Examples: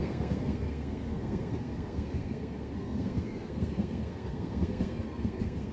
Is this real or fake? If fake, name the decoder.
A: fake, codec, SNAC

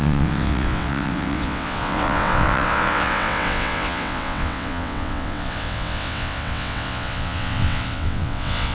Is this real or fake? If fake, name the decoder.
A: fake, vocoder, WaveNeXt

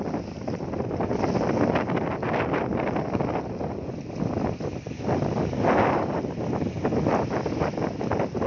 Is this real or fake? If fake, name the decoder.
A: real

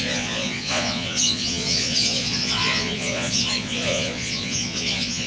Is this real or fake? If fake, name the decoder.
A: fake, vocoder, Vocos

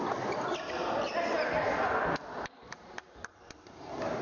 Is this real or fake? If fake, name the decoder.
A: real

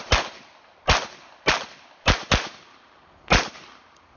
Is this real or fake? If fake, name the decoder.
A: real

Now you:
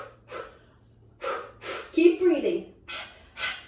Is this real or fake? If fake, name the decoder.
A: real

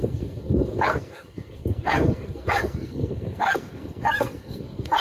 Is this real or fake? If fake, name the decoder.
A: fake, codec, SNAC